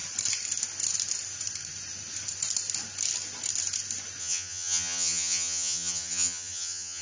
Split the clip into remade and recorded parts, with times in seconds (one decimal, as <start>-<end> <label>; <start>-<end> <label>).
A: 0.0-4.2 recorded; 4.2-7.0 remade